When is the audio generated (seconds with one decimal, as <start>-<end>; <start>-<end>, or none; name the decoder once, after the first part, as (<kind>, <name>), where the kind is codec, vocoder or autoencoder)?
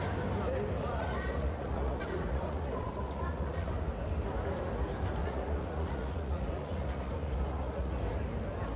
0.8-3.7 (vocoder, Vocos); 5.2-8.0